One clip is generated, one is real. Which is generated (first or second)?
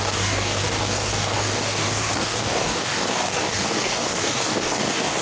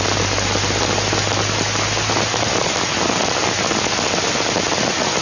first